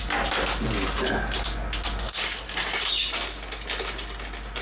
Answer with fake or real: real